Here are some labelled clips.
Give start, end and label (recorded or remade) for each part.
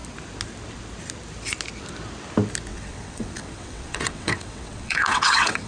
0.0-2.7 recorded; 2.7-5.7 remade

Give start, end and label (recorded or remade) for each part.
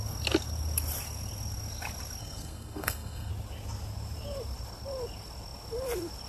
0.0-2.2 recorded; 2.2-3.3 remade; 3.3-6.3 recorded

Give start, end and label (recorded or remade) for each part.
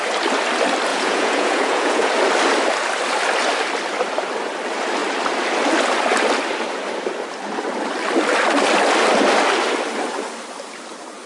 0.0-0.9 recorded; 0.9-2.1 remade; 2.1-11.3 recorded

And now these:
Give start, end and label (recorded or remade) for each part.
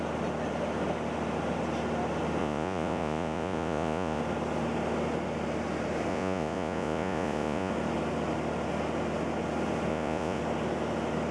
0.0-2.4 recorded; 2.4-4.2 remade; 4.2-6.1 recorded; 6.1-7.7 remade; 7.7-9.9 recorded; 9.9-10.4 remade; 10.4-11.3 recorded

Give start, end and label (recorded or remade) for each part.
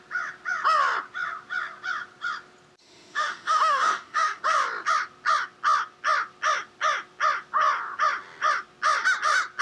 0.0-2.8 recorded; 2.8-4.4 remade; 4.4-9.6 recorded